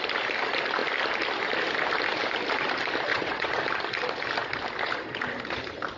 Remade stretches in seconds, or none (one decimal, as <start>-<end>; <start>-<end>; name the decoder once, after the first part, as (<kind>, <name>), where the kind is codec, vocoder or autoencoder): 3.1-3.6 (vocoder, WaveNeXt)